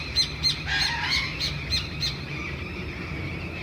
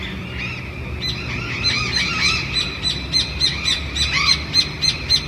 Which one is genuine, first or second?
second